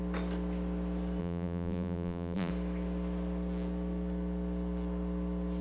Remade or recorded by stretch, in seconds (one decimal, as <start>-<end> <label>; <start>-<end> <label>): 0.0-1.2 recorded; 1.2-2.5 remade; 2.5-5.6 recorded